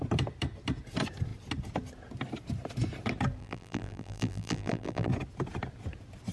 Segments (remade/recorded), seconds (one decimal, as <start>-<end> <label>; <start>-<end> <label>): 0.0-3.4 recorded; 3.4-5.1 remade; 5.1-6.3 recorded